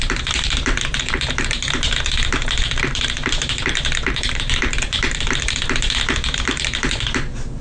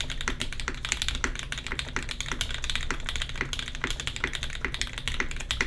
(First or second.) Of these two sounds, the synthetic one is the first